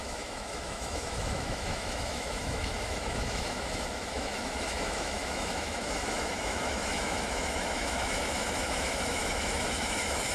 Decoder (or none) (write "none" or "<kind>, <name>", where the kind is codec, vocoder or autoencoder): autoencoder, DAC-VAE